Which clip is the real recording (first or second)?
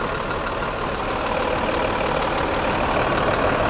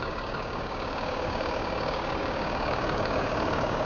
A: first